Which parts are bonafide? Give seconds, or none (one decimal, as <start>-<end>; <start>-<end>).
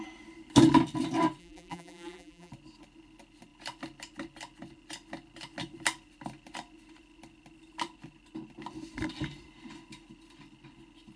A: 0.0-1.4; 2.5-11.2